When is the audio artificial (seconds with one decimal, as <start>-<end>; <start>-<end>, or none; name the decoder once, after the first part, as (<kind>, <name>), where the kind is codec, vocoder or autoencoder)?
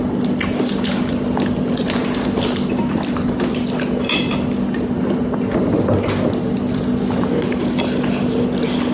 none